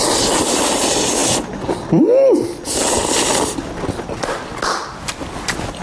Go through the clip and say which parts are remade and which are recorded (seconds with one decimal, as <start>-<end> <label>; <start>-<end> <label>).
0.0-1.2 recorded; 1.2-2.0 remade; 2.0-5.8 recorded